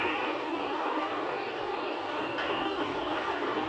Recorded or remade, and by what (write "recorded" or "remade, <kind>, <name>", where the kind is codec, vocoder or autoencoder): remade, codec, DAC